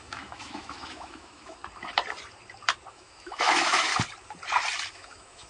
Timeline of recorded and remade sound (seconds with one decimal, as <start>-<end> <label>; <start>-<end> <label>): 0.0-1.6 remade; 1.6-2.9 recorded; 2.9-3.9 remade; 3.9-4.9 recorded; 4.9-5.5 remade